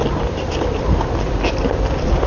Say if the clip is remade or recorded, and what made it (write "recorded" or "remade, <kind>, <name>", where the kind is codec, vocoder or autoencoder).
remade, vocoder, BigVGAN v2